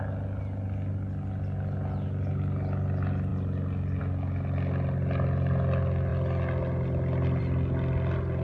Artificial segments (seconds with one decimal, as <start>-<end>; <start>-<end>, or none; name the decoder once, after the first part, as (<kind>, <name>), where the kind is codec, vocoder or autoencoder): none